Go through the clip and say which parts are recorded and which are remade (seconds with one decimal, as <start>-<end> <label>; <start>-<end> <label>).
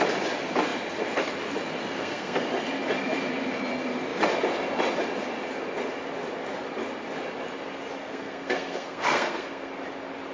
0.0-1.8 recorded; 1.8-2.4 remade; 2.4-8.0 recorded; 8.0-9.7 remade; 9.7-10.3 recorded